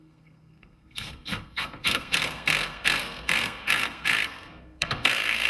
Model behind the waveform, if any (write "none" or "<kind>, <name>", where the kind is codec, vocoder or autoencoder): codec, SNAC